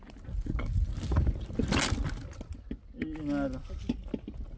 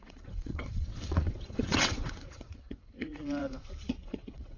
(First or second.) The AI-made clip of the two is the second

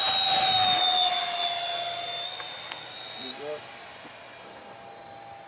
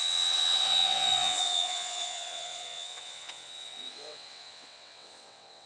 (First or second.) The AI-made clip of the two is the second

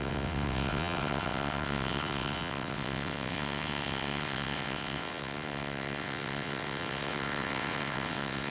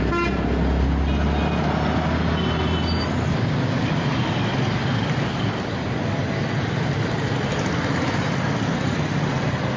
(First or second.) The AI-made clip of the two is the first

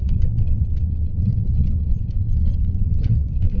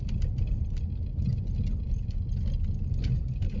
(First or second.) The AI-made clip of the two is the first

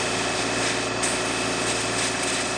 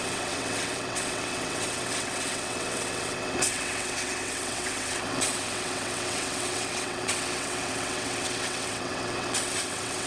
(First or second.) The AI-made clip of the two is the second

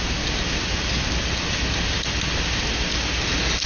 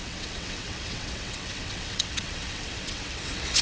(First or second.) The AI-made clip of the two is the second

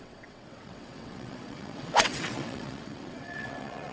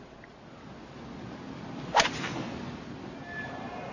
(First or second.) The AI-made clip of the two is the first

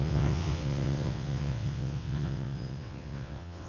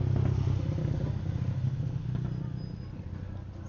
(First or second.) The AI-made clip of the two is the first